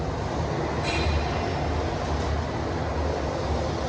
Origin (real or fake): real